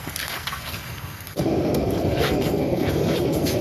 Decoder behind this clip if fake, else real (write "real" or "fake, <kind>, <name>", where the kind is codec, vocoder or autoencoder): fake, codec, SNAC